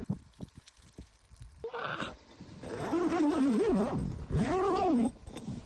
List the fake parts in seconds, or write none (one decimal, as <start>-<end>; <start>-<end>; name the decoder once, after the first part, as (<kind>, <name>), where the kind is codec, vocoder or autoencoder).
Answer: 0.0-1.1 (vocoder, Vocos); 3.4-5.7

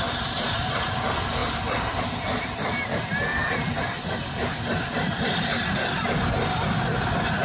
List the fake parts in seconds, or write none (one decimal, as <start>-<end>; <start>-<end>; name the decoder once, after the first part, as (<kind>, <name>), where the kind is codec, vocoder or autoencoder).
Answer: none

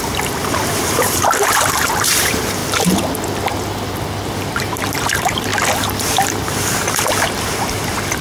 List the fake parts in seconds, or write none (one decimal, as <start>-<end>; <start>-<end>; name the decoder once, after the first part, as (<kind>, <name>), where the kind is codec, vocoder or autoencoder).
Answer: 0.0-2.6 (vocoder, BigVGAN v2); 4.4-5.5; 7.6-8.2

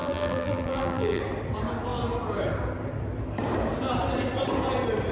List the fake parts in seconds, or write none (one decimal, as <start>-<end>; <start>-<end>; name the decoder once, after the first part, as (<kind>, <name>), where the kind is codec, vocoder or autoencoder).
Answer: 0.0-1.2 (vocoder, BigVGAN v2)